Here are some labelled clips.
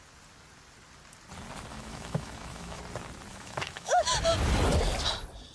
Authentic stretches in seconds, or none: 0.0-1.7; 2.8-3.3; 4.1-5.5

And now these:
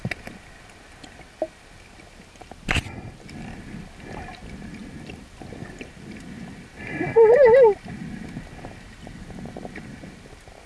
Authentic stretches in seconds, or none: 0.0-10.7